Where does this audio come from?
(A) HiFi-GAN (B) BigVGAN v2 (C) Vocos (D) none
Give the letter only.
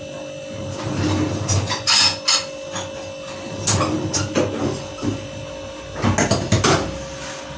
D